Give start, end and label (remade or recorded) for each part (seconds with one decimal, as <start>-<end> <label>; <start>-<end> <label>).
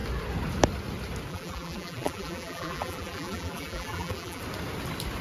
0.0-1.3 recorded; 1.3-4.4 remade; 4.4-5.2 recorded